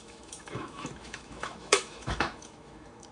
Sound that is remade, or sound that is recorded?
remade